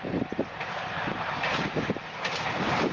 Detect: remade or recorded remade